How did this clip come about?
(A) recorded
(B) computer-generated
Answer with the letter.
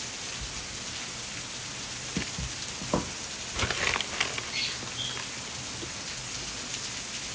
A